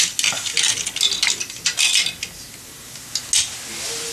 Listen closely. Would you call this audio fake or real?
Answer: real